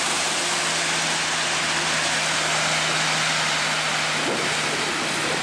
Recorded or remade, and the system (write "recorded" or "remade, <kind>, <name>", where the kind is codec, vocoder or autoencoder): recorded